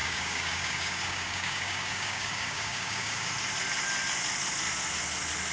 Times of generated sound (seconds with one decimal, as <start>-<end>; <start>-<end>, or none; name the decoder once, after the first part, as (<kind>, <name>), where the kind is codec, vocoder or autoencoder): 0.0-3.3 (codec, DAC)